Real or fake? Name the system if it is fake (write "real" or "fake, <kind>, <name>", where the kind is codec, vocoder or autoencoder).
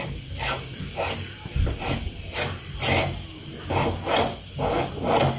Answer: real